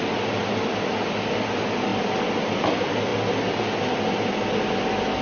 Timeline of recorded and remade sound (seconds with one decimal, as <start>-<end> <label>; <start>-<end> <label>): 0.0-5.2 recorded